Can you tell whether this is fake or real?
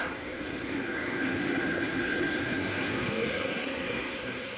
fake